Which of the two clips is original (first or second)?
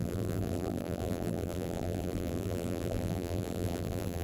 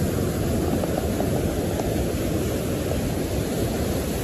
second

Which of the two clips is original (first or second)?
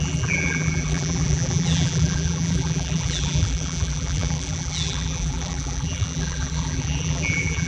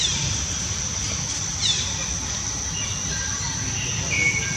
second